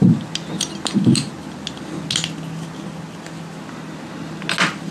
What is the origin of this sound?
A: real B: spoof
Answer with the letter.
A